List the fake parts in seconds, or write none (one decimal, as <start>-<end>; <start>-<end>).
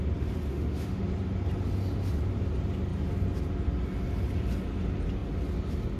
0.5-1.0